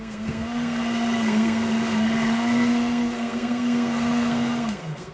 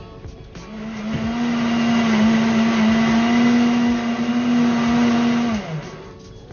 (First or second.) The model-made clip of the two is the first